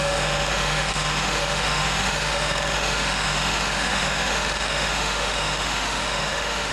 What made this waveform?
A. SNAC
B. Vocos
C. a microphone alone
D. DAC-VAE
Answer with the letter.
D